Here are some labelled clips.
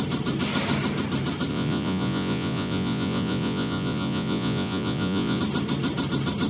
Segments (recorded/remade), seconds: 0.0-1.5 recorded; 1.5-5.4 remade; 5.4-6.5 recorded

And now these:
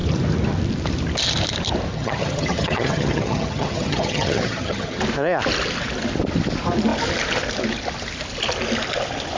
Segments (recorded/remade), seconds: 0.0-1.9 recorded; 1.9-5.0 remade; 5.0-9.4 recorded

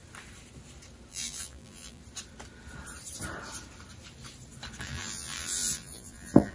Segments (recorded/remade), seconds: 0.0-1.1 recorded; 1.1-2.0 remade; 2.0-4.8 recorded; 4.8-6.5 remade

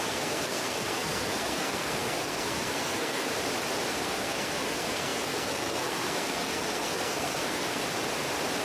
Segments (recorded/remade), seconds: 0.0-3.3 remade; 3.3-3.9 recorded; 3.9-7.8 remade; 7.8-8.6 recorded